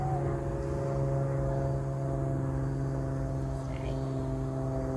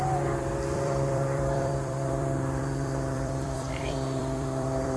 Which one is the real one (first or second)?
first